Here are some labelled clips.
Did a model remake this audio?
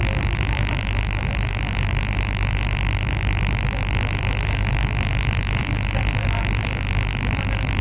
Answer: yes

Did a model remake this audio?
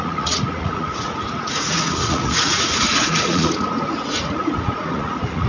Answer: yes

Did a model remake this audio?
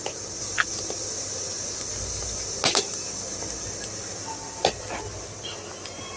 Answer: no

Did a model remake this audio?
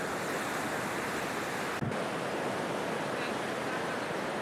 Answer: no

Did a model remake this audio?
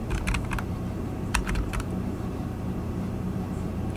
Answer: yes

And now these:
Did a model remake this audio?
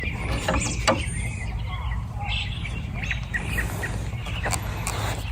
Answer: no